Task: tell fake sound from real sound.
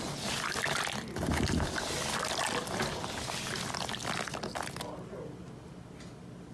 real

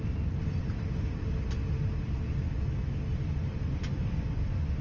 real